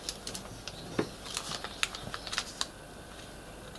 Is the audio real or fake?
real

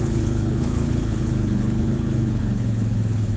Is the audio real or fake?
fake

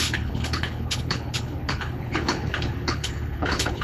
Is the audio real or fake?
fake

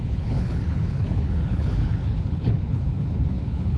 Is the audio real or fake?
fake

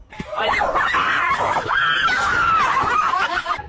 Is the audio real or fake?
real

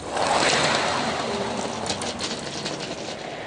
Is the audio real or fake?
real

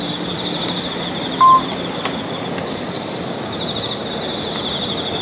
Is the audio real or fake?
real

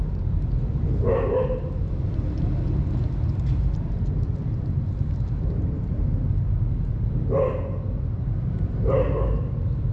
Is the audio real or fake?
real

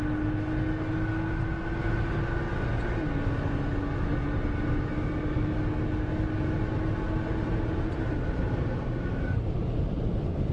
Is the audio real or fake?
real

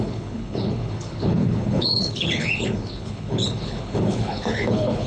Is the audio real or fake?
fake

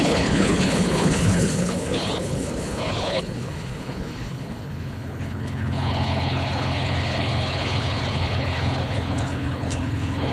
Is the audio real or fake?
fake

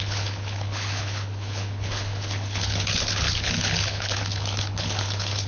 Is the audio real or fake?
fake